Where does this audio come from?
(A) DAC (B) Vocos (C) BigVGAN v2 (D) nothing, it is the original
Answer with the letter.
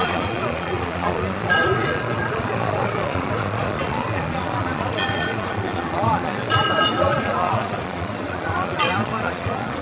B